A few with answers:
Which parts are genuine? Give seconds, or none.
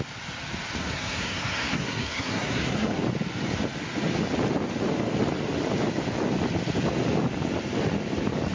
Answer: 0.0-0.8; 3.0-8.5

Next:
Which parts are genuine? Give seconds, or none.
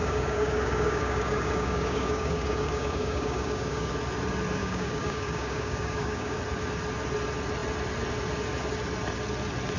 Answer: 3.9-4.6; 6.4-9.8